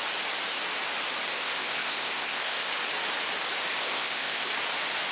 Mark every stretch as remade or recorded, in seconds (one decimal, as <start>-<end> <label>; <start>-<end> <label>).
0.0-1.3 recorded; 1.3-2.7 remade; 2.7-3.7 recorded; 3.7-4.5 remade; 4.5-5.1 recorded